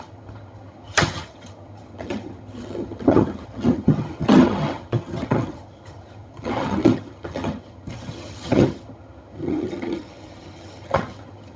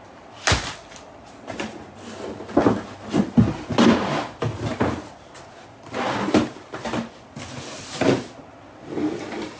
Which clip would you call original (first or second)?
second